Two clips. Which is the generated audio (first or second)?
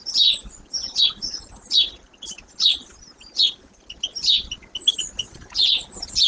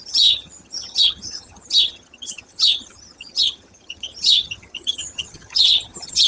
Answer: second